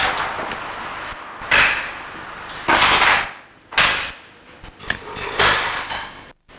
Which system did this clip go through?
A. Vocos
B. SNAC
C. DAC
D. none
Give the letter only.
D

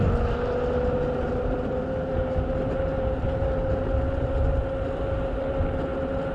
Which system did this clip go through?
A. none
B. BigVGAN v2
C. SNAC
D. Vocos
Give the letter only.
A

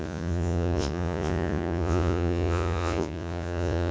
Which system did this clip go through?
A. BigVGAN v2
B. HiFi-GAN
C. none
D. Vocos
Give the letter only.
D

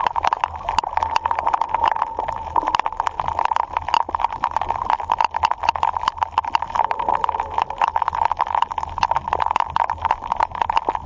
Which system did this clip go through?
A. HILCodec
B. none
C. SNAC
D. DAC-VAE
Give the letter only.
B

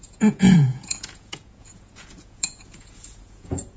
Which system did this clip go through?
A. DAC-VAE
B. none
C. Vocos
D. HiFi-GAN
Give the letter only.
C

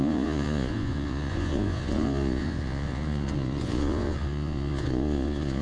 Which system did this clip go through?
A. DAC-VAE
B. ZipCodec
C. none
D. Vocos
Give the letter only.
D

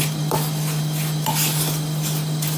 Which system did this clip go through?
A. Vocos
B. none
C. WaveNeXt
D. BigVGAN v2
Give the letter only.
B